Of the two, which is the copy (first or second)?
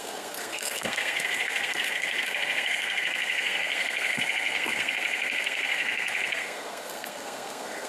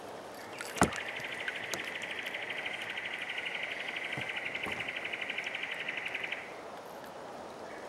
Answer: first